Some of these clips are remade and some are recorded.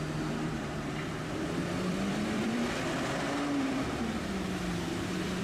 remade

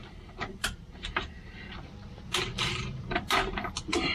remade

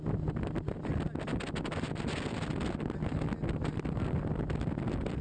recorded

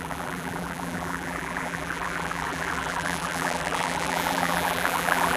remade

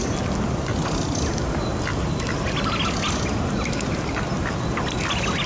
recorded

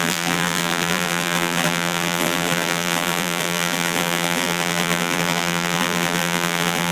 remade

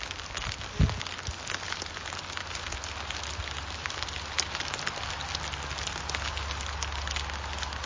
recorded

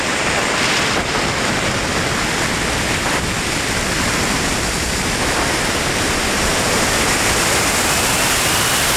remade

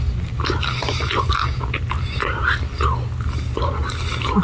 recorded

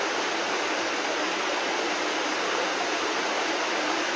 recorded